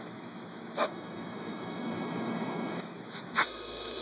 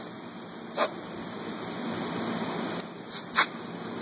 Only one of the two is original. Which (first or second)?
second